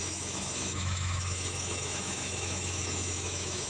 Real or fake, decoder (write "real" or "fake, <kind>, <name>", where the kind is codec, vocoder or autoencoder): fake, autoencoder, DAC-VAE